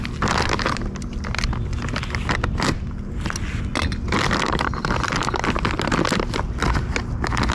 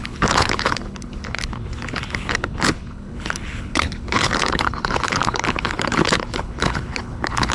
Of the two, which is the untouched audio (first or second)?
first